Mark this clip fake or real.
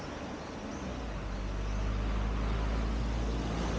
real